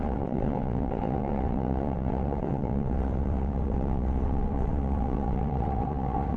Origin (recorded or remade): remade